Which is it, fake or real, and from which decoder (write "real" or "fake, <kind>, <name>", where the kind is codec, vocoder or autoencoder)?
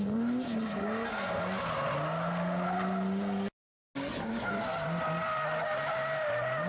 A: real